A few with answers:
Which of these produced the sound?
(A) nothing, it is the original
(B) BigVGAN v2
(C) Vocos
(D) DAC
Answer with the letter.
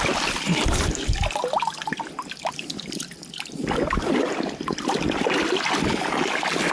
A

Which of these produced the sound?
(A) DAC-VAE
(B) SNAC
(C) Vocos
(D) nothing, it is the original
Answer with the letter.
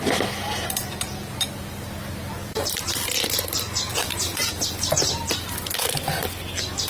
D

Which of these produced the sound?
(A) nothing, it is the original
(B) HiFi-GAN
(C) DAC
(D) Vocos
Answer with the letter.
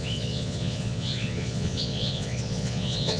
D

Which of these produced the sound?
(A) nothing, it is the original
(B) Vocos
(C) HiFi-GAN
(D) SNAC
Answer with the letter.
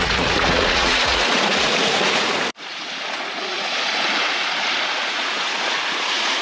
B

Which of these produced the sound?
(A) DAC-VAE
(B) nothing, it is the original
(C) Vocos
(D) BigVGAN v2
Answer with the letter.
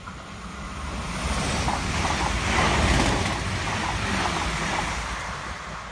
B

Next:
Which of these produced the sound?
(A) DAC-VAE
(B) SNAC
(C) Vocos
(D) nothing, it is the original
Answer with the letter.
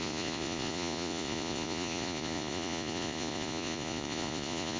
C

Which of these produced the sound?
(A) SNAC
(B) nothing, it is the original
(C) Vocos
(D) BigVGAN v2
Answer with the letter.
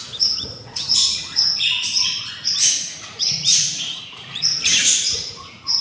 C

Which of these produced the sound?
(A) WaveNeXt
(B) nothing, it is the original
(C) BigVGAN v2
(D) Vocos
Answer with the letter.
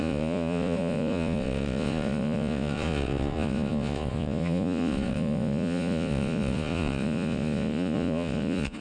D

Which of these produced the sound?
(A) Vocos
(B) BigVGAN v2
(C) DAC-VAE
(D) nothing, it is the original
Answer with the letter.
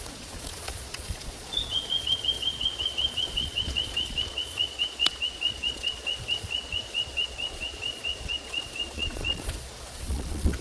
A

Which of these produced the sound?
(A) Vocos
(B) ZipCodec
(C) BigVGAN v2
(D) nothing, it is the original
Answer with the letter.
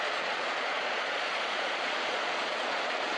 A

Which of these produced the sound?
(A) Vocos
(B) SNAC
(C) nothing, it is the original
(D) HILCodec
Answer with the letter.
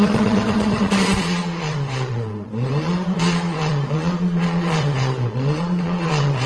A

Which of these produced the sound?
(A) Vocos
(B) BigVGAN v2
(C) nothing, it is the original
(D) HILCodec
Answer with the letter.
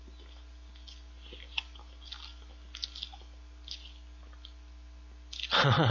C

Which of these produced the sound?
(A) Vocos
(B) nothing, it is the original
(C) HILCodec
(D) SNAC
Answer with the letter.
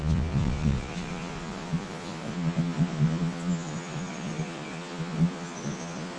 A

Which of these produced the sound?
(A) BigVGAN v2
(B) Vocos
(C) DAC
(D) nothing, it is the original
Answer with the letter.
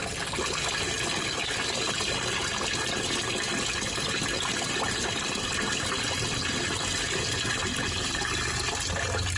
D